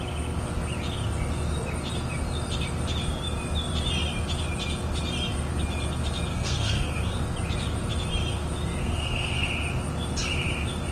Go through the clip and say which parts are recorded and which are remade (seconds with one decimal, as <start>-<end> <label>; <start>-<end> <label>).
0.0-6.3 recorded; 6.3-7.2 remade; 7.2-8.8 recorded; 8.8-9.5 remade; 9.5-10.9 recorded